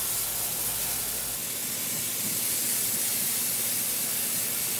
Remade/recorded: recorded